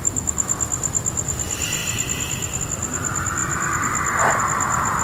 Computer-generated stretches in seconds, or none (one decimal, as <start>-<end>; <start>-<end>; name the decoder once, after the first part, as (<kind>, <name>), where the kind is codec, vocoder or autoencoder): none